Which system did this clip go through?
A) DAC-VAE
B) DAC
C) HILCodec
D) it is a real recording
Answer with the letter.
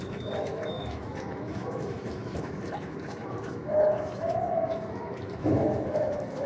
A